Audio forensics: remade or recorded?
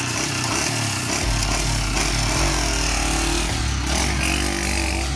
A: recorded